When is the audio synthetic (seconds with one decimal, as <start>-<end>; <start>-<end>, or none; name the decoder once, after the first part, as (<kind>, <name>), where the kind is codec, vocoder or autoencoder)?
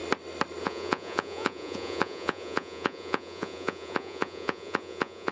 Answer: 0.6-5.3 (vocoder, Vocos)